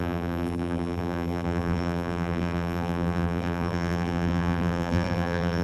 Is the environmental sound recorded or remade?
remade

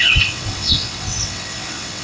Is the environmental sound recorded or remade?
remade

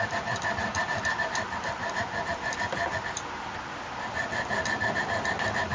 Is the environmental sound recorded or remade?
recorded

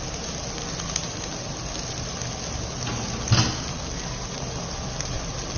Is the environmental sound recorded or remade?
recorded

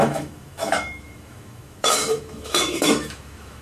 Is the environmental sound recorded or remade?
remade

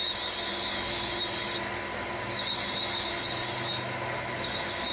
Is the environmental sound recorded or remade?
recorded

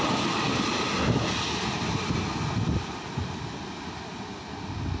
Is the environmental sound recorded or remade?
recorded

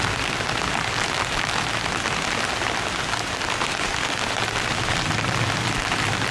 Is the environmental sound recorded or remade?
recorded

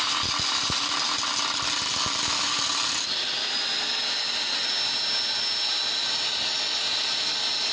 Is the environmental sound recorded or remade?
recorded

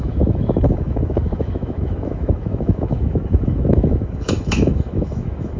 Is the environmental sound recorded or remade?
remade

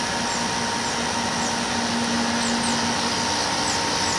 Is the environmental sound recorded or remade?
recorded